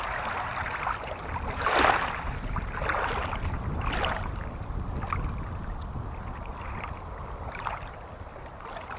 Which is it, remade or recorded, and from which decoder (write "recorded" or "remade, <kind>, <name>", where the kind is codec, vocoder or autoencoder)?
recorded